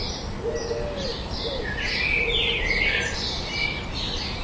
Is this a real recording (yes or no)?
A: yes